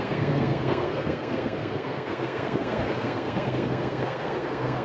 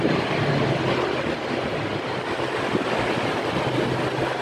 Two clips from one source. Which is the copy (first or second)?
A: first